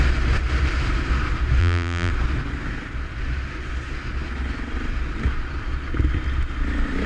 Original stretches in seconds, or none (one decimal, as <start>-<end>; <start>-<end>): 0.0-1.6; 2.1-7.1